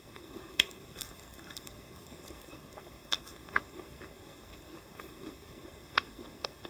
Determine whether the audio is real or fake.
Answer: fake